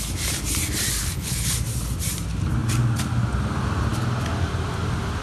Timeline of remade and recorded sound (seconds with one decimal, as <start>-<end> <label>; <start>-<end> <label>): 0.0-1.0 recorded; 1.0-1.5 remade; 1.5-5.2 recorded